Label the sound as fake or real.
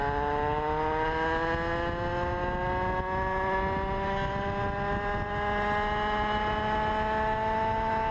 real